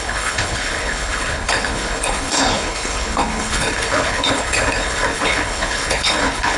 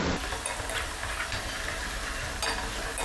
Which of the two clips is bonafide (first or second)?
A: second